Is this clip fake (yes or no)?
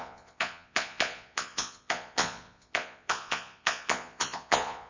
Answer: yes